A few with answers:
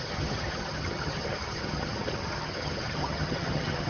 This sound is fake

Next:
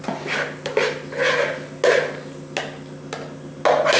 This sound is real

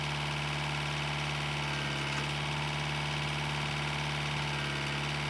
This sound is real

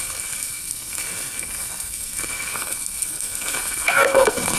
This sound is fake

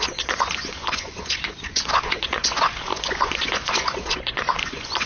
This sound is fake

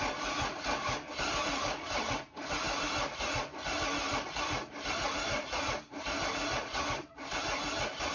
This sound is real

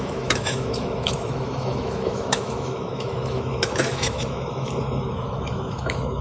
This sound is fake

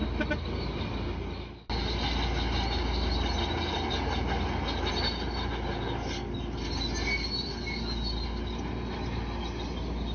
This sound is real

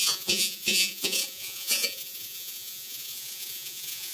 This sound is fake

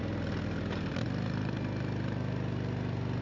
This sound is real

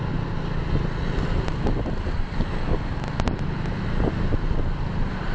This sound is real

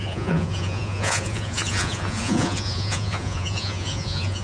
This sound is fake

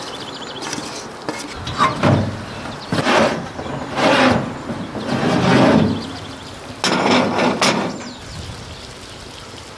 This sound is real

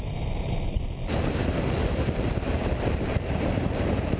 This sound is fake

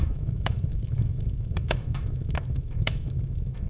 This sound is fake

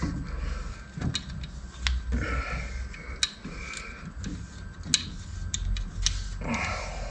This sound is real